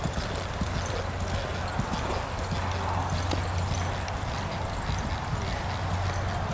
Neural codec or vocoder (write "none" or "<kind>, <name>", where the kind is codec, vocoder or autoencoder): none